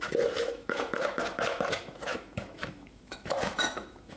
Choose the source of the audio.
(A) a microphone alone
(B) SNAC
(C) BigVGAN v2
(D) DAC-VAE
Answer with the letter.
D